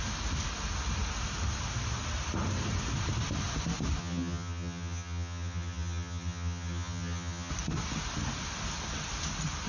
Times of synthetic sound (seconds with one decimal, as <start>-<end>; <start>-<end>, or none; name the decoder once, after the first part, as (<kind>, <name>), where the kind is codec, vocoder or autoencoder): 4.0-7.5 (vocoder, HiFi-GAN)